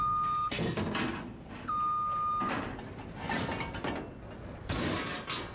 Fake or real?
real